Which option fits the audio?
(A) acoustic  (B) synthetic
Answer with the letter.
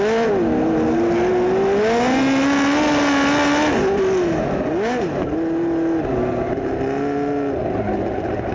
A